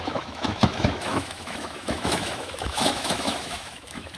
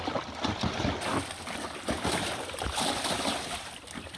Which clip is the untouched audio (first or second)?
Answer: second